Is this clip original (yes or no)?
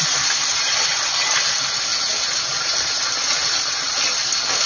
yes